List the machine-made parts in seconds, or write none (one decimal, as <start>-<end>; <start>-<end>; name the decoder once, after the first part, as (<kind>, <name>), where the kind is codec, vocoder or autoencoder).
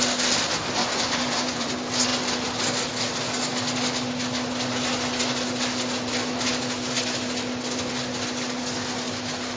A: 0.8-1.7 (vocoder, Vocos)